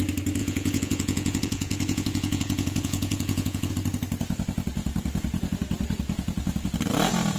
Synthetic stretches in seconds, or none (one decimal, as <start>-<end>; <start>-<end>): 0.4-3.7